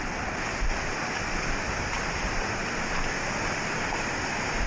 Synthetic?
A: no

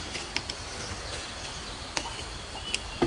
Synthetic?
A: no